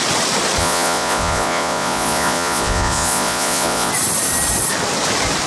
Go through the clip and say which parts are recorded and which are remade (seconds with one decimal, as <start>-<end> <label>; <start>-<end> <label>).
0.0-0.6 recorded; 0.6-3.9 remade; 3.9-5.5 recorded

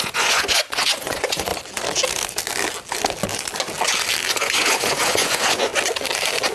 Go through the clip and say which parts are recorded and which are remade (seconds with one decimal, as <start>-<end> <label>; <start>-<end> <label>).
0.0-1.5 remade; 1.5-4.3 recorded; 4.3-5.7 remade; 5.7-6.5 recorded

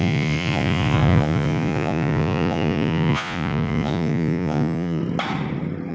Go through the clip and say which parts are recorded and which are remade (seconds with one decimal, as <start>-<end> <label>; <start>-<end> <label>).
0.0-5.0 remade; 5.0-5.9 recorded

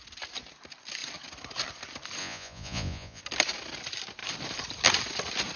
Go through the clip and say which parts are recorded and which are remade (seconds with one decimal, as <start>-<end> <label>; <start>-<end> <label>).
0.0-2.2 recorded; 2.2-3.2 remade; 3.2-5.6 recorded

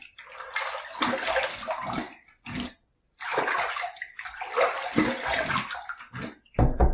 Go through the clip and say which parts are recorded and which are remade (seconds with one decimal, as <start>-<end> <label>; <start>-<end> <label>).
0.0-6.9 recorded

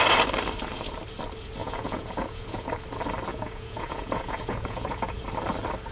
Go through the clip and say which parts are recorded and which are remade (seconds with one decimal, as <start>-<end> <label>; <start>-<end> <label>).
0.0-1.6 recorded; 1.6-2.7 remade; 2.7-3.3 recorded; 3.3-5.2 remade; 5.2-5.9 recorded

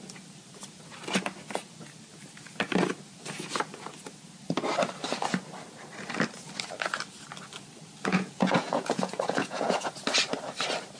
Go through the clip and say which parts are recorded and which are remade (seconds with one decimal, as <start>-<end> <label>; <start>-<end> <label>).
0.0-8.1 recorded; 8.1-9.9 remade; 9.9-11.0 recorded